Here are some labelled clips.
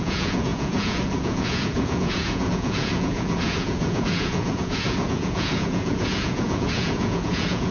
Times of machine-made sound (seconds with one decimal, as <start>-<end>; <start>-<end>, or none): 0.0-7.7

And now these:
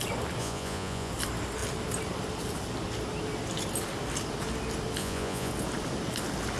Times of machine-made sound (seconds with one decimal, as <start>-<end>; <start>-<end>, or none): 0.4-1.1; 5.0-5.5

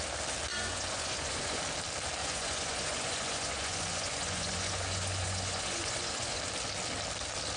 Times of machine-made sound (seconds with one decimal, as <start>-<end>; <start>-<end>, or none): 0.5-1.6; 2.2-6.4